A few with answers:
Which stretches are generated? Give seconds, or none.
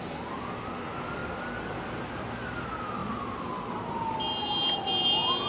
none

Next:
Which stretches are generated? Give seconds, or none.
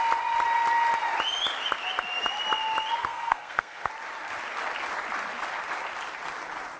3.0-3.9 (codec, SNAC)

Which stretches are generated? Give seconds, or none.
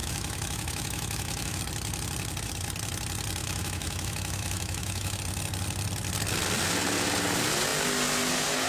0.0-1.6 (autoencoder, DAC-VAE); 3.4-5.2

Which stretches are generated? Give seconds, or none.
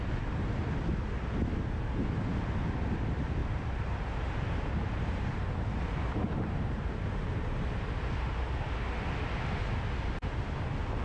3.4-7.1 (vocoder, BigVGAN v2)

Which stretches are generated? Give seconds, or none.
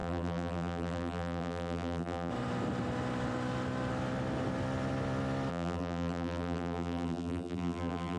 0.0-2.3 (vocoder, BigVGAN v2); 5.5-8.2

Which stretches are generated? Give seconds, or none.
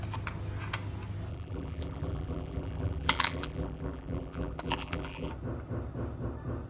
1.3-5.3 (vocoder, BigVGAN v2)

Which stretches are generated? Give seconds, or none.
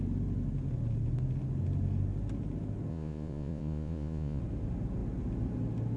2.9-4.4 (vocoder, Vocos)